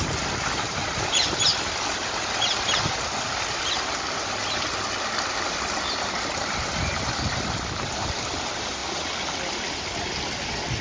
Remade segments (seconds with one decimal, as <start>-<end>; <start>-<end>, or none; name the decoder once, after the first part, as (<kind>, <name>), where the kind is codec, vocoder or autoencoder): none